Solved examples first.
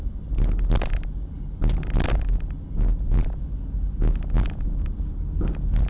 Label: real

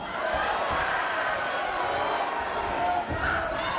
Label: real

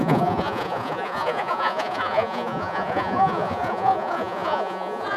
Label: fake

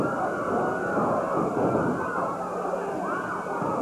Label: real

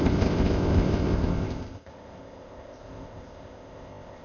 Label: fake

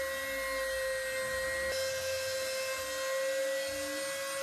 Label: real